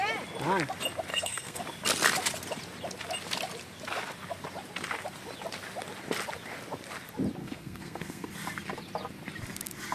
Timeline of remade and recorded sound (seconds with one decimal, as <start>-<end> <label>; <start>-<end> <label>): 0.0-1.1 recorded; 1.1-1.6 remade; 1.6-7.4 recorded; 7.4-8.3 remade; 8.3-9.9 recorded